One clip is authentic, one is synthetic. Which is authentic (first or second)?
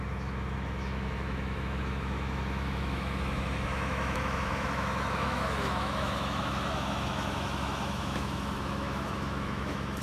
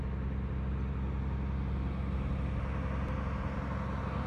second